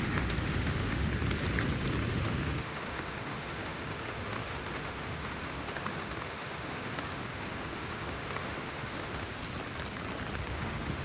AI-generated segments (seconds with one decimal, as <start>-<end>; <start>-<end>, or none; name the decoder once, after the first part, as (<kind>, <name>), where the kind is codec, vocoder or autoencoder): 0.0-1.1 (autoencoder, DAC-VAE); 2.1-9.4; 10.5-11.0